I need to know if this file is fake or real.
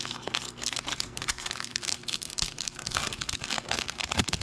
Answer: fake